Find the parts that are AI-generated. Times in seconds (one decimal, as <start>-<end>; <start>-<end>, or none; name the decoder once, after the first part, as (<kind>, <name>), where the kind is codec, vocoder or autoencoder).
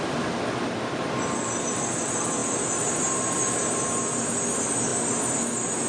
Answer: none